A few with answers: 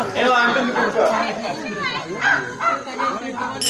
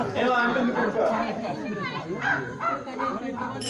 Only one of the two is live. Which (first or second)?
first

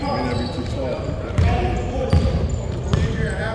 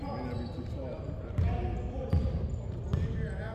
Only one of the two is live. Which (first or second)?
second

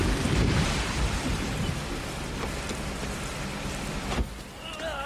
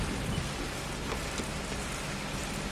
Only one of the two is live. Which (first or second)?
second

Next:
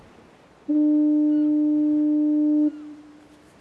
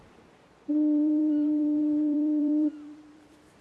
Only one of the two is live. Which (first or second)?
first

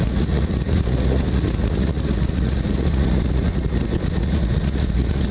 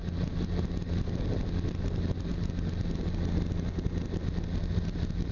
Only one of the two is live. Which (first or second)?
second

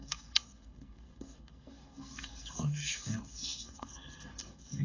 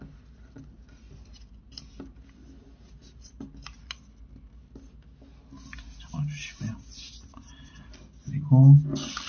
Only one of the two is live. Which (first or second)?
second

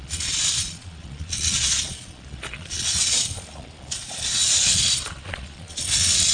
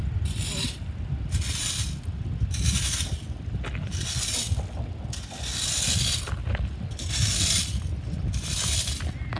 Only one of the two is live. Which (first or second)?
second